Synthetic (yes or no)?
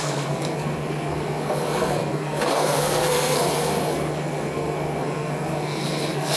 yes